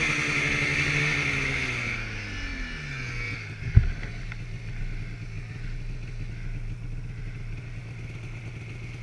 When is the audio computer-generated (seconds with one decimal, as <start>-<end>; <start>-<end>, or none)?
none